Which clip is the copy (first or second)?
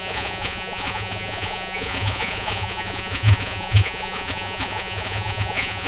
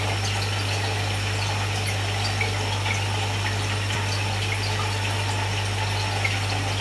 first